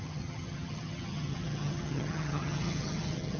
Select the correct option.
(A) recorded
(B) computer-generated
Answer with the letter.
B